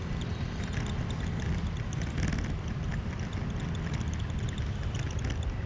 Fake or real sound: real